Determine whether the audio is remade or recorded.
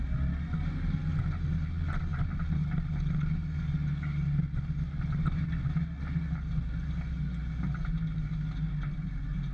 recorded